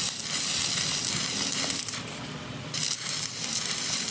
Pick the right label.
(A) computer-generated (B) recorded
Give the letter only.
B